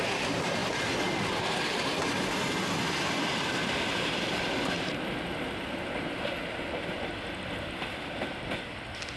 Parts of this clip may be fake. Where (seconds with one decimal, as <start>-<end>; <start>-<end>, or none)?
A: none